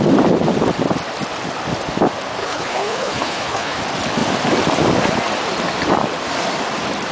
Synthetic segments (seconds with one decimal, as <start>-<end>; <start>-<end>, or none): 2.4-3.8